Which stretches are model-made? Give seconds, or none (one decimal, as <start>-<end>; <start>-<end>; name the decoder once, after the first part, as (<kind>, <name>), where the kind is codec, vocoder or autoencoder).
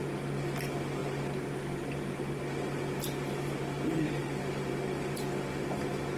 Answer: none